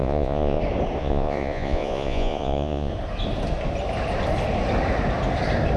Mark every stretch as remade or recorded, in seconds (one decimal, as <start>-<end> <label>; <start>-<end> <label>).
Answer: 0.0-0.6 remade; 0.6-1.0 recorded; 1.0-2.9 remade; 2.9-5.8 recorded